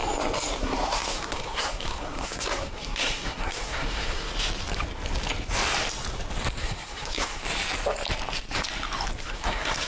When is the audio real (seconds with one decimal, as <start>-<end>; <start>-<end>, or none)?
0.0-0.6; 4.3-6.6; 7.4-9.2